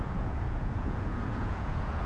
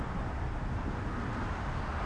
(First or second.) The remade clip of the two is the first